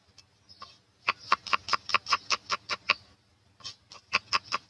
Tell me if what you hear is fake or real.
real